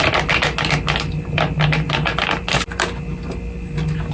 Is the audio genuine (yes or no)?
yes